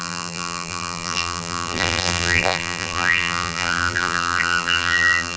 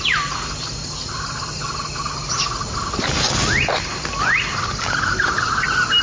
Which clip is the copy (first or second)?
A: first